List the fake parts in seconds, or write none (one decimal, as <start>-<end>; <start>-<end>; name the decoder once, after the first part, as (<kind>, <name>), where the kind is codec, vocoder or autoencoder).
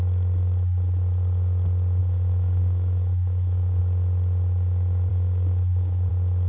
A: 2.0-3.8 (codec, DAC); 5.1-6.1